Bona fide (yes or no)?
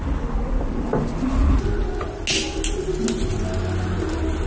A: yes